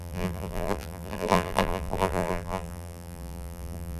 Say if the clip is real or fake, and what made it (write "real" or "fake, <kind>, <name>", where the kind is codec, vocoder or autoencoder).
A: fake, vocoder, BigVGAN v2